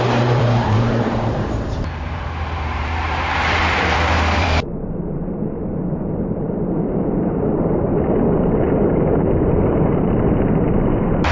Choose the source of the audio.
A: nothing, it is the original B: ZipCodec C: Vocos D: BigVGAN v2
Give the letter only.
D